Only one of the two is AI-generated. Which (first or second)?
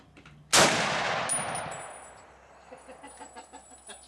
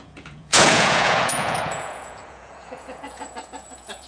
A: second